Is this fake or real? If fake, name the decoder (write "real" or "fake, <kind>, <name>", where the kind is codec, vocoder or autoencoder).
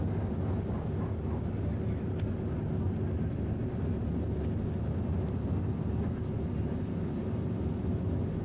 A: real